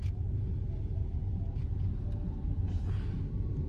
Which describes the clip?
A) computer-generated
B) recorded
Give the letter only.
B